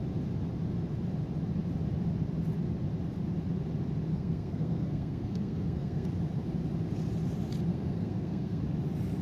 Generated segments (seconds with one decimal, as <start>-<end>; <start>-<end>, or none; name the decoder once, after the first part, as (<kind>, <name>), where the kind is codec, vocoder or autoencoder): 4.1-6.1 (codec, SNAC); 7.7-8.6